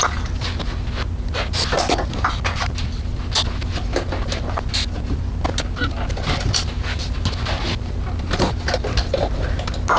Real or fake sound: real